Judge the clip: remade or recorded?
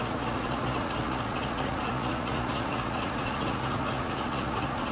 remade